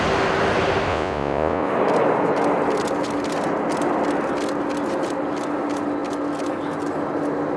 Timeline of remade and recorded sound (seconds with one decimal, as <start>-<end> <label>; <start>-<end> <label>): 0.0-0.9 recorded; 0.9-1.7 remade; 1.7-7.6 recorded